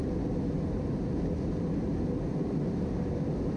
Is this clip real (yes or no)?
yes